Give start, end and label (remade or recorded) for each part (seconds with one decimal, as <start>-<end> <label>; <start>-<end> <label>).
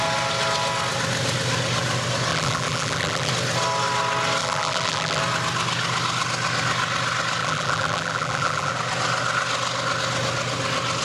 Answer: 0.0-2.3 recorded; 2.3-3.3 remade; 3.3-4.4 recorded; 4.4-5.2 remade; 5.2-7.4 recorded; 7.4-8.7 remade; 8.7-11.0 recorded